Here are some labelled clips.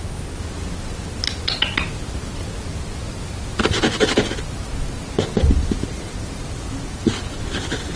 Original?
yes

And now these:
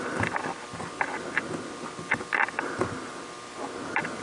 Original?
yes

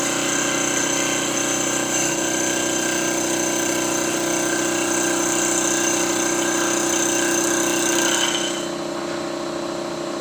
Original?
yes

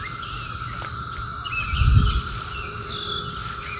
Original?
yes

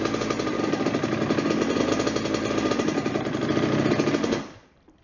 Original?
yes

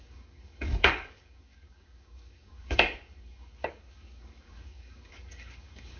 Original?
no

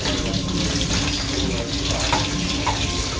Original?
yes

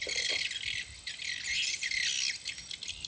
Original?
yes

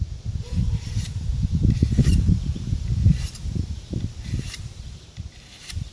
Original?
no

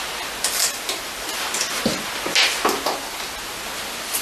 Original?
yes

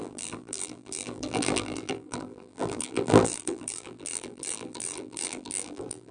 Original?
no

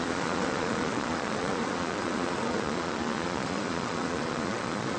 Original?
no